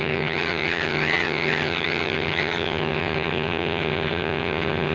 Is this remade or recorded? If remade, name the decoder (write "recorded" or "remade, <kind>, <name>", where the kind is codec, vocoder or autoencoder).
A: remade, vocoder, HiFi-GAN